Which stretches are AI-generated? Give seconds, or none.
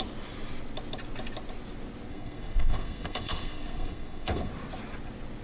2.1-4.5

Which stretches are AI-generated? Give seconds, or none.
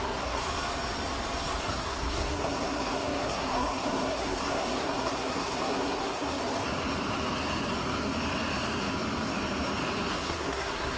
0.0-0.4; 1.6-6.4; 10.1-11.0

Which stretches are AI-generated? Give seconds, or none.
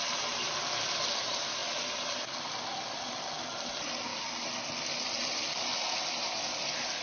none